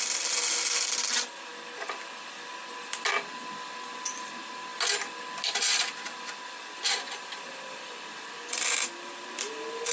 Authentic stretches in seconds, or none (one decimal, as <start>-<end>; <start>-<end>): 0.0-9.9